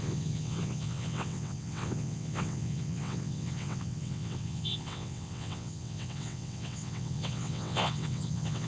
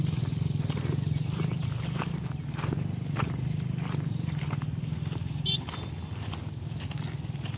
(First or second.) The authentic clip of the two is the second